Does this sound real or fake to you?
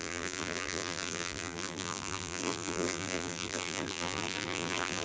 fake